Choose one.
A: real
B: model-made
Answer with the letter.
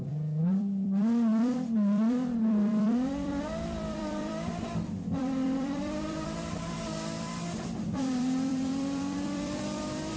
B